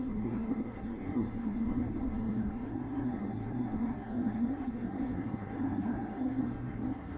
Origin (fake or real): fake